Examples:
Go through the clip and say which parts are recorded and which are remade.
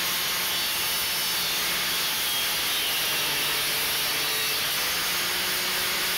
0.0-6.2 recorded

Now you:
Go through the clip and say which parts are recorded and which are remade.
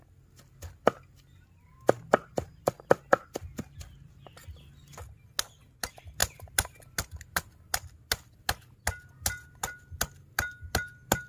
0.0-11.3 recorded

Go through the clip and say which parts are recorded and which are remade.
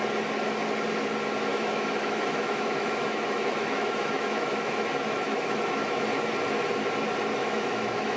0.0-1.5 recorded; 1.5-6.3 remade; 6.3-7.4 recorded; 7.4-8.2 remade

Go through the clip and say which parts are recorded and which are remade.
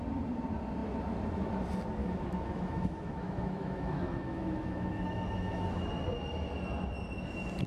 0.0-2.0 recorded; 2.0-5.9 remade; 5.9-7.7 recorded